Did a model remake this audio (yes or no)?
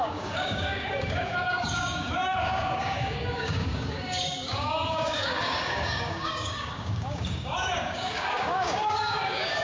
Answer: yes